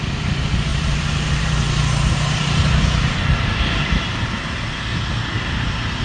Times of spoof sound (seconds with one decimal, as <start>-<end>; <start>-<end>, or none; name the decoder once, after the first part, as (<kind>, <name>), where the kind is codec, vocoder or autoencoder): 0.7-4.3 (vocoder, BigVGAN v2)